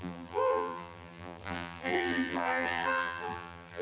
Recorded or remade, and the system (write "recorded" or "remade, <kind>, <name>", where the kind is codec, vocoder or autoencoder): remade, vocoder, BigVGAN v2